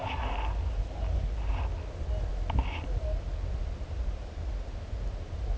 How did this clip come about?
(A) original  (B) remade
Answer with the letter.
A